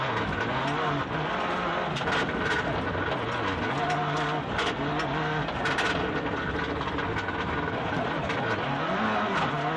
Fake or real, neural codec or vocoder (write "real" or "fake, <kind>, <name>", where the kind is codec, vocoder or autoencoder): real